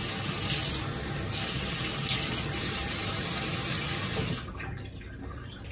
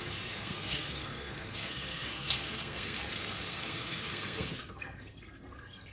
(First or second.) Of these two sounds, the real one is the first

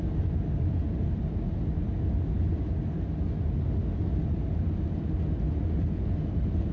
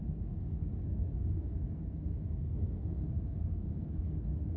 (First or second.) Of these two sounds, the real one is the first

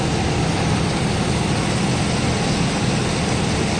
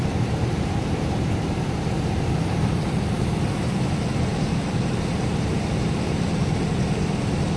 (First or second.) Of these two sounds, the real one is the first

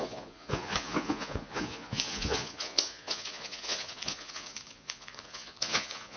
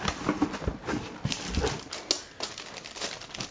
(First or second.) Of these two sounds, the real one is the second